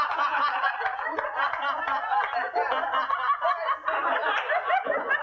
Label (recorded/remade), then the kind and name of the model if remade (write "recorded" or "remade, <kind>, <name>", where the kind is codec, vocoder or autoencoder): recorded